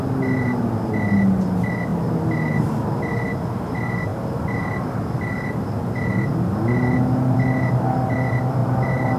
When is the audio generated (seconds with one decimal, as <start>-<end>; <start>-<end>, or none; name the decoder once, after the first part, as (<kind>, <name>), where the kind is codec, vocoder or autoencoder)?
none